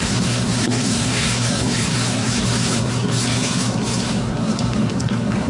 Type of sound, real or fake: fake